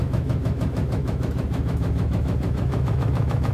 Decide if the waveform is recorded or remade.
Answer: remade